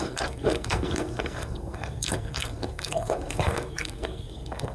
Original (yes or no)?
no